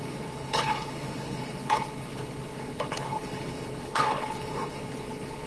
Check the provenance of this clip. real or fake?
fake